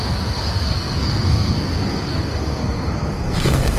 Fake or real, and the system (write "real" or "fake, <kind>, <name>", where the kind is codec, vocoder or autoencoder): fake, codec, SNAC